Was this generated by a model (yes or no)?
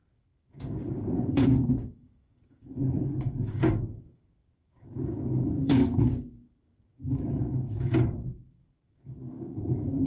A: yes